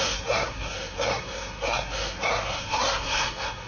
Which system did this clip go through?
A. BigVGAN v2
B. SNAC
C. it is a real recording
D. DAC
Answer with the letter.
B